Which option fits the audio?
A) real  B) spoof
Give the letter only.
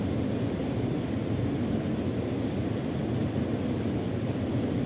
A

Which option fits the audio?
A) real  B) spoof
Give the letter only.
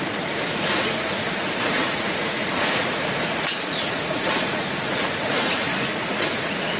B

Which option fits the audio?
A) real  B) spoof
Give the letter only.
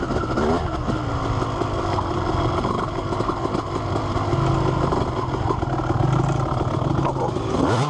A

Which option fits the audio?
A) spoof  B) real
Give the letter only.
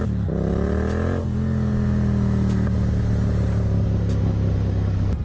B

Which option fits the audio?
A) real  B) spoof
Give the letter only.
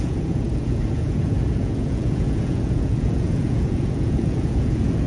B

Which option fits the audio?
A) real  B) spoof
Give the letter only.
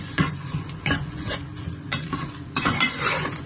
B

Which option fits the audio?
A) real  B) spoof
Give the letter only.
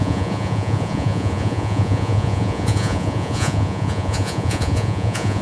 B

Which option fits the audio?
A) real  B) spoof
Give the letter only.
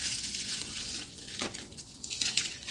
B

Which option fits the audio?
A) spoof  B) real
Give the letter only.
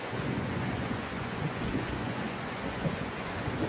A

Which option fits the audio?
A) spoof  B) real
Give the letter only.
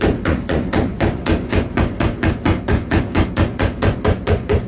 A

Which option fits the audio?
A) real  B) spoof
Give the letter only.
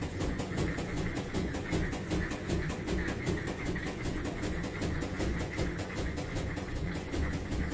B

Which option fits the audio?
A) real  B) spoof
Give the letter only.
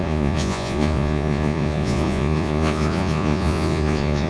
B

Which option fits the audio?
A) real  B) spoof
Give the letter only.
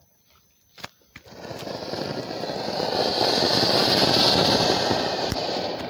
A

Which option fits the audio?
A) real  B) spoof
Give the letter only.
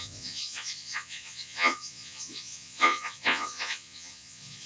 B